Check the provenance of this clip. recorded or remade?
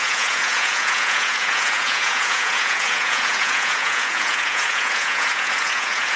remade